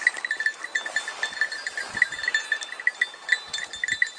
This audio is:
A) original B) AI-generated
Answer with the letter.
A